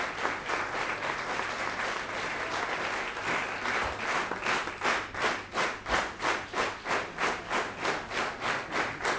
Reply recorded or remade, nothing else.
recorded